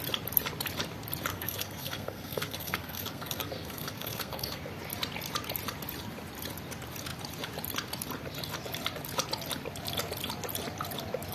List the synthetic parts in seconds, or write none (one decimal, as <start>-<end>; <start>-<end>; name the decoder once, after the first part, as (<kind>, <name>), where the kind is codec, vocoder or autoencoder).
1.3-4.6 (codec, SNAC)